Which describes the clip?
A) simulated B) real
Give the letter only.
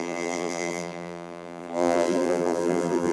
A